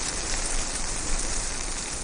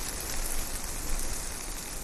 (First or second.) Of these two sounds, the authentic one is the second